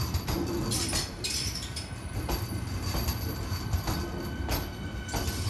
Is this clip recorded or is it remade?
recorded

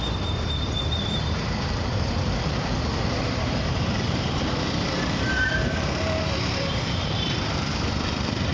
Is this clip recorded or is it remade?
remade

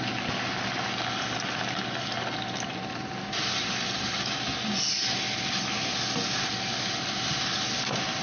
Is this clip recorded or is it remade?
recorded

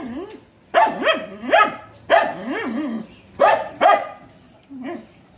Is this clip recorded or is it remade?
recorded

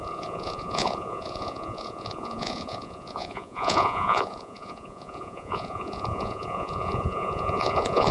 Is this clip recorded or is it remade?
remade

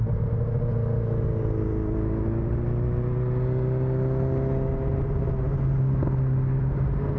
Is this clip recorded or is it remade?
recorded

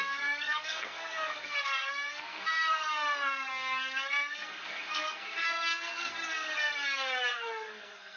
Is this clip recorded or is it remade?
remade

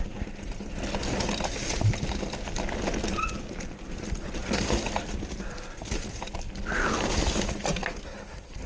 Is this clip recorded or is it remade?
recorded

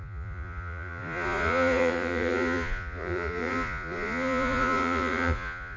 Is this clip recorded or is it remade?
remade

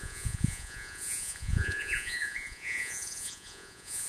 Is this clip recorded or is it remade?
remade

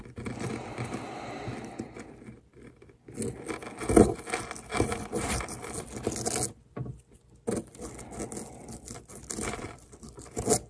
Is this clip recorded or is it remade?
recorded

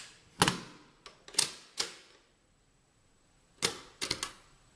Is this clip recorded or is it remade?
recorded